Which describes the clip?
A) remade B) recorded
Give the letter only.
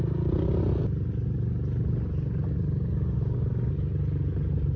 B